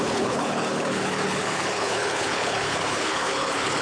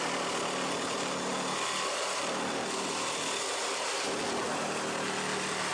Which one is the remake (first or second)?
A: first